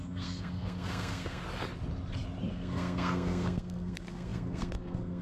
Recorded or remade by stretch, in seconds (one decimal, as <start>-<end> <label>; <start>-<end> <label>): 0.0-1.4 remade; 1.4-2.5 recorded; 2.5-5.2 remade